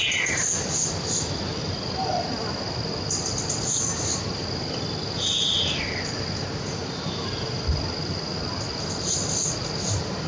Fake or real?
real